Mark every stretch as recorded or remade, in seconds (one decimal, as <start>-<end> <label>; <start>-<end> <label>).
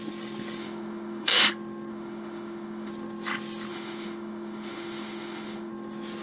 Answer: 0.0-0.6 recorded; 0.6-1.5 remade; 1.5-1.9 recorded; 1.9-2.9 remade; 2.9-3.7 recorded; 3.7-5.7 remade; 5.7-6.2 recorded